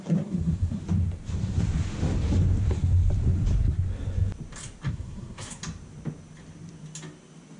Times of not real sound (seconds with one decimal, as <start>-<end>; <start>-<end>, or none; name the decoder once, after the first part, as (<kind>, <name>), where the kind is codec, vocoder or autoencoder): 0.0-0.8 (codec, SNAC); 4.9-5.6